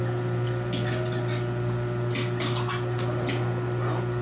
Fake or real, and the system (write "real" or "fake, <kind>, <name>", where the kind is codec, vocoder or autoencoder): real